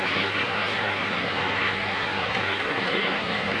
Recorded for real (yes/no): no